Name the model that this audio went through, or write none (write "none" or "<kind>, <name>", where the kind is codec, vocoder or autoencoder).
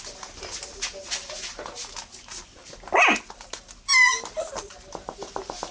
none